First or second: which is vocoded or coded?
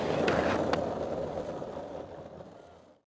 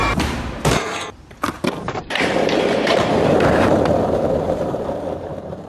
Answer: second